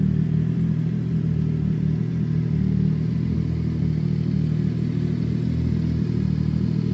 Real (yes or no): yes